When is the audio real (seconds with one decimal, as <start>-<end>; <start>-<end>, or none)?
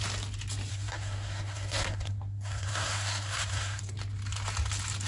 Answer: 0.0-0.7; 3.8-5.1